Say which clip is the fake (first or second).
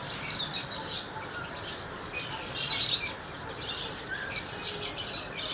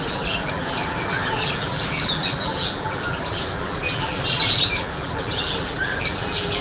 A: second